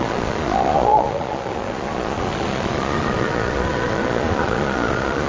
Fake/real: fake